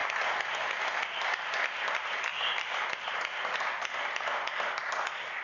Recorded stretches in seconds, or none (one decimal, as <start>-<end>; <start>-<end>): 0.0-5.4